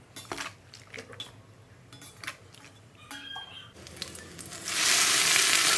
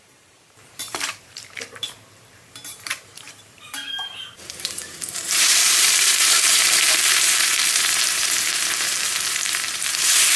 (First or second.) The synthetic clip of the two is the second